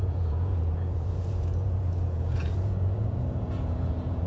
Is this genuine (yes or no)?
no